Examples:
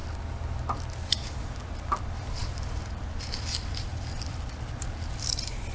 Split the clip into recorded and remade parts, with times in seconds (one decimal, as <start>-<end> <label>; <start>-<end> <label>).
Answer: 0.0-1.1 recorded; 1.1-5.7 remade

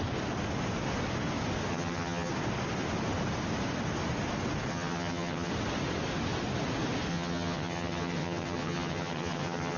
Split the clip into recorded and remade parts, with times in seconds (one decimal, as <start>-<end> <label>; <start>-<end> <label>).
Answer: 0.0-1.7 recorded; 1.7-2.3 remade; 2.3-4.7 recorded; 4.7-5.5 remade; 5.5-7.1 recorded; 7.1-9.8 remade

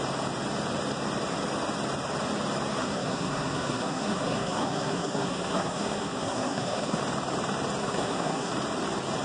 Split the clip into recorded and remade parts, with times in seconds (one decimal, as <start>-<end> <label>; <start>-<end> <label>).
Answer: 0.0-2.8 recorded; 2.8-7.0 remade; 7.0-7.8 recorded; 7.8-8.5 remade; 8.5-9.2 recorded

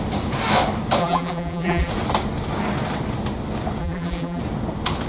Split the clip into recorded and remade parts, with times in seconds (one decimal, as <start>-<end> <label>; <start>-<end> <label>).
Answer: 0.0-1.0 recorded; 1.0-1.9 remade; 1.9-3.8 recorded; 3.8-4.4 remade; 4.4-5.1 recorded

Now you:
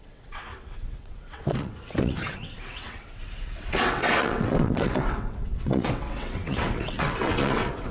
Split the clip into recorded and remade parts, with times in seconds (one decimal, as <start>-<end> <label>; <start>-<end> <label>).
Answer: 0.0-7.9 remade

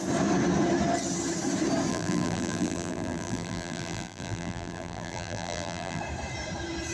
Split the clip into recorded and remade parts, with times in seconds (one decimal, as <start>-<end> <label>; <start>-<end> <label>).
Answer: 0.0-1.9 recorded; 1.9-6.0 remade; 6.0-6.9 recorded